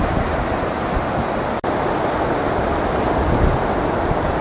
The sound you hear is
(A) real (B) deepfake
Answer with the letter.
A